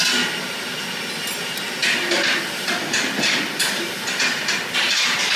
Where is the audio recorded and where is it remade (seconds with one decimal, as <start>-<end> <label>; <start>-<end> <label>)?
0.0-5.4 recorded

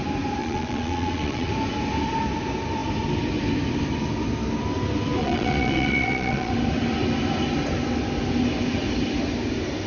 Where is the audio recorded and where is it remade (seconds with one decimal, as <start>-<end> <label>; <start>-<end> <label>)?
0.0-0.4 recorded; 0.4-1.5 remade; 1.5-5.2 recorded; 5.2-6.5 remade; 6.5-9.9 recorded